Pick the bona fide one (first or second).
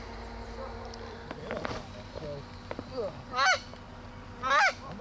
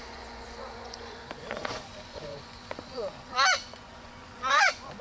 first